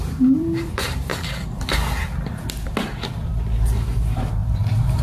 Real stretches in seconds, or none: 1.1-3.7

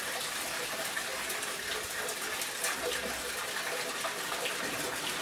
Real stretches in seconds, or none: 0.0-5.2